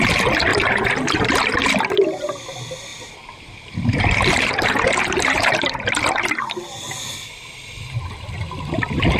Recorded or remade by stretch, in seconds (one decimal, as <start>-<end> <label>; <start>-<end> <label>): 0.0-0.5 recorded; 0.5-1.3 remade; 1.3-2.9 recorded; 2.9-6.3 remade; 6.3-9.2 recorded